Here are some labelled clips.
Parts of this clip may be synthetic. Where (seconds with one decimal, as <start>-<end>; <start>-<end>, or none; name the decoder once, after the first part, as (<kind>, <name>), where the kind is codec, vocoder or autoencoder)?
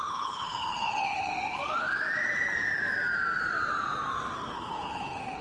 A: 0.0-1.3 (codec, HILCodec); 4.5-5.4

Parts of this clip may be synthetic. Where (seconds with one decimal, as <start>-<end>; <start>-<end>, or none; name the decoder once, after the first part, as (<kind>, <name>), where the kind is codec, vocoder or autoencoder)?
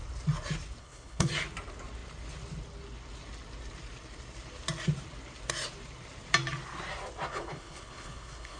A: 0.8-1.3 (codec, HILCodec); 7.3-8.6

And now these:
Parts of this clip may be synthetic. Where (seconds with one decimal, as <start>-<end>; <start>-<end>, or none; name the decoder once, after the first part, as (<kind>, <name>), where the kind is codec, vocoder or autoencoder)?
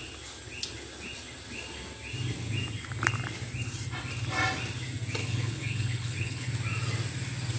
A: 5.2-6.5 (codec, HILCodec)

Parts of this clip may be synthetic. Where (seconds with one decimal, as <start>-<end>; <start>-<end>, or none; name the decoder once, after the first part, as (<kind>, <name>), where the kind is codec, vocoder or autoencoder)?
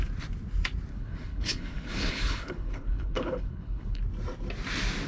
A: 0.9-4.0 (codec, HILCodec)